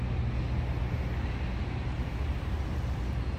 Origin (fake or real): real